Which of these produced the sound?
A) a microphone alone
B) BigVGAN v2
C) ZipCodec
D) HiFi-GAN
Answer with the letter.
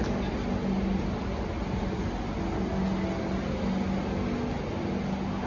A